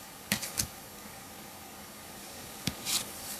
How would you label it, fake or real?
fake